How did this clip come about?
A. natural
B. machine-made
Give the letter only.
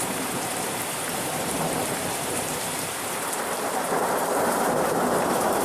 B